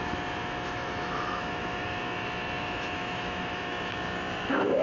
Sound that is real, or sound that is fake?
fake